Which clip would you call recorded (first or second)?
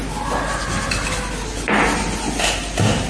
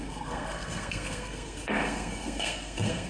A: first